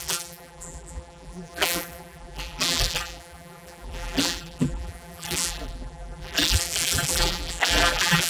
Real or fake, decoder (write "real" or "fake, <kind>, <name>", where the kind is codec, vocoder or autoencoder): fake, vocoder, BigVGAN v2